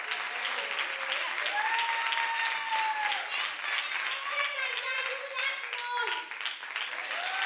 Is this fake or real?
real